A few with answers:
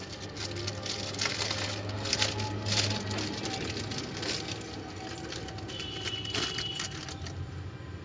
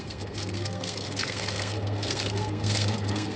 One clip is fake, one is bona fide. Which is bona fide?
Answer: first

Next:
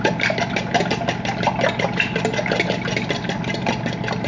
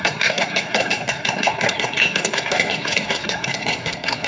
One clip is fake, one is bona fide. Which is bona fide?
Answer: first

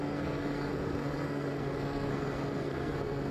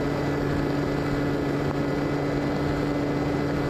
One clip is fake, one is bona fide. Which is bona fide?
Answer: second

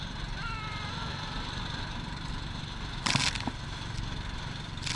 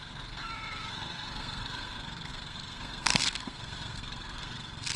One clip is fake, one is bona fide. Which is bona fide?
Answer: first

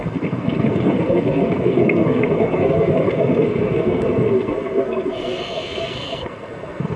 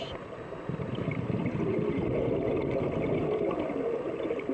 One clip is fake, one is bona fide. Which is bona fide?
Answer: second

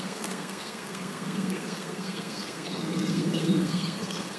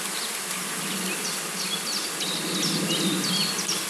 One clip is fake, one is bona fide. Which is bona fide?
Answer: second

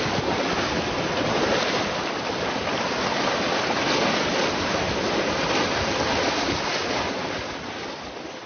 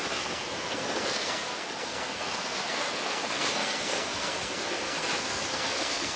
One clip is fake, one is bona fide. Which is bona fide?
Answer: first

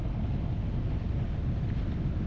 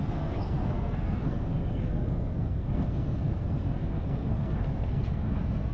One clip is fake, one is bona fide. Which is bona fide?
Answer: first